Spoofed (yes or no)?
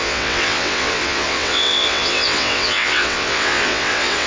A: yes